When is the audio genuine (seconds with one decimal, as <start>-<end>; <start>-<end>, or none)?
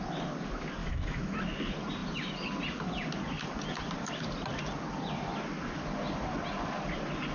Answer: 0.0-0.8; 1.4-7.3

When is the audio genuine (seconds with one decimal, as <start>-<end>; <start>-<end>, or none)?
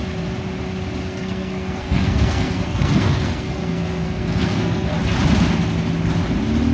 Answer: 0.0-1.0; 5.0-6.7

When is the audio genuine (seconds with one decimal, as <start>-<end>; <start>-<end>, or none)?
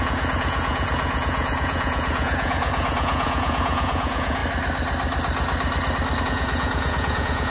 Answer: 4.4-6.2